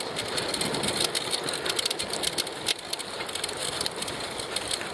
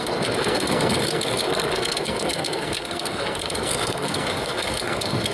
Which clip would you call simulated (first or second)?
second